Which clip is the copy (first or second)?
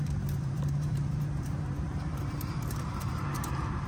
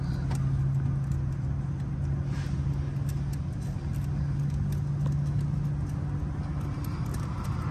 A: first